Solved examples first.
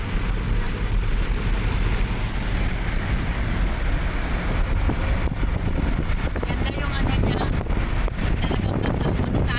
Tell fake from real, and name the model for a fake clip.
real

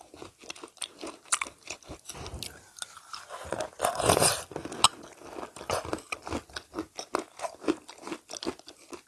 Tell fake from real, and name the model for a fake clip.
real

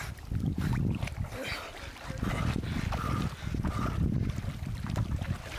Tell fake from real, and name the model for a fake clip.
real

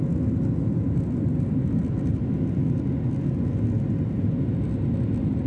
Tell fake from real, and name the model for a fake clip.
real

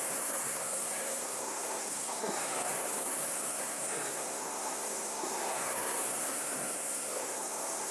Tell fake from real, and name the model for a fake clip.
fake, codec, SNAC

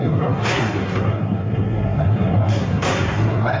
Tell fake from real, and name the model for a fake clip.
fake, codec, SNAC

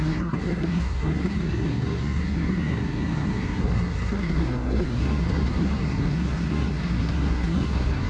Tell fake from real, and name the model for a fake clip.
fake, codec, SNAC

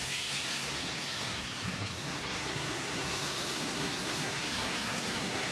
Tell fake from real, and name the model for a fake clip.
fake, codec, SNAC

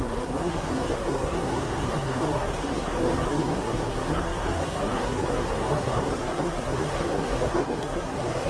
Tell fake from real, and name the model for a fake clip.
fake, codec, SNAC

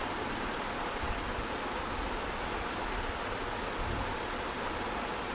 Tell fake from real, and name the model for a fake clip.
real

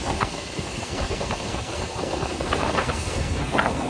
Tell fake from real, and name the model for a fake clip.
fake, codec, SNAC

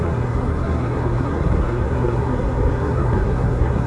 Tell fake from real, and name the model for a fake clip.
fake, codec, SNAC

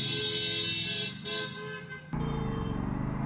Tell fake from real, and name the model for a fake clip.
real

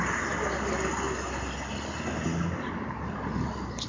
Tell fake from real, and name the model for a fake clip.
real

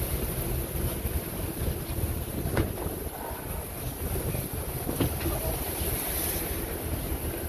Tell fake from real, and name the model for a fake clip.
real